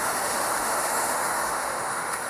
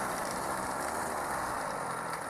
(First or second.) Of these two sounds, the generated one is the first